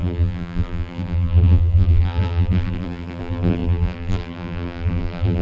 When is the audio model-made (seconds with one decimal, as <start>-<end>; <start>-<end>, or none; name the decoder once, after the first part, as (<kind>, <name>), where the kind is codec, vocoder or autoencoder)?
0.0-5.4 (vocoder, BigVGAN v2)